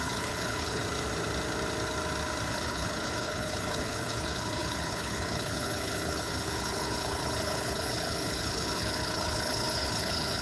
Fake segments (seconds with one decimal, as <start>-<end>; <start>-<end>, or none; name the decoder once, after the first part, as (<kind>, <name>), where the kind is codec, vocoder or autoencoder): 0.0-0.8 (codec, HILCodec); 2.5-10.4